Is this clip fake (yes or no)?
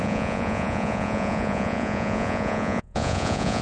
yes